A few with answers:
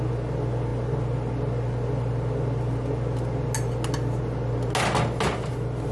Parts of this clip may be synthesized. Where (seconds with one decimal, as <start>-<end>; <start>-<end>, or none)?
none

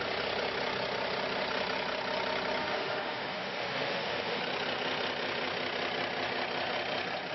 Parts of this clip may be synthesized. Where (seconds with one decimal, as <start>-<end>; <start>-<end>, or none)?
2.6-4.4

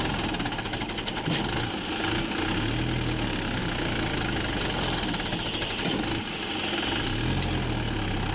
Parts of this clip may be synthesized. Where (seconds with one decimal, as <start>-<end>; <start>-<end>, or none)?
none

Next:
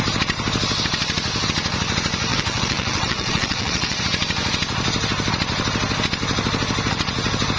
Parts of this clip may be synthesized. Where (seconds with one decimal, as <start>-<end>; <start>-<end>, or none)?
2.3-4.0

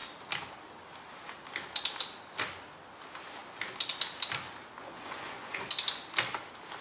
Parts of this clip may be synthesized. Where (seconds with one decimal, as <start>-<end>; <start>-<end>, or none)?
4.8-5.7

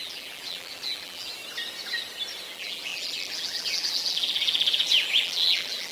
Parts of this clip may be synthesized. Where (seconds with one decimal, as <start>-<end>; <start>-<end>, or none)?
0.0-1.3; 2.5-5.9

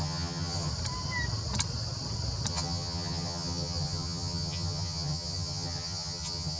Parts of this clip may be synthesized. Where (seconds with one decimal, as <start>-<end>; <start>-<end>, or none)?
0.0-0.7; 2.5-6.6